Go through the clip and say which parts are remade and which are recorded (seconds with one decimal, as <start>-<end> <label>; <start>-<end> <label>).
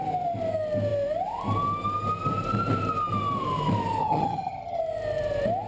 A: 0.0-4.0 recorded; 4.0-4.8 remade; 4.8-5.7 recorded